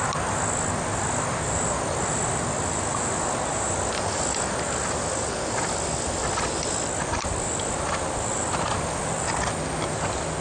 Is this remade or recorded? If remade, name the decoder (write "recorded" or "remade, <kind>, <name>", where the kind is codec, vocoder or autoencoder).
recorded